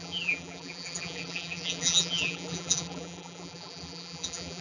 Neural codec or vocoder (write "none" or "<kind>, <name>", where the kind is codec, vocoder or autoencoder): vocoder, BigVGAN v2